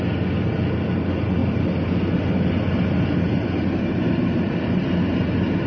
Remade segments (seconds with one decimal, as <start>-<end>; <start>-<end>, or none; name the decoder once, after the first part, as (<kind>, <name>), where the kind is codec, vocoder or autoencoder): none